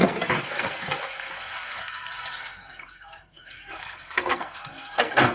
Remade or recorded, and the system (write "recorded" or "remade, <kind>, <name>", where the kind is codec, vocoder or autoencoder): remade, codec, SNAC